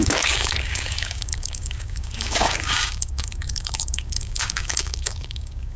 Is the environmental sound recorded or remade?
remade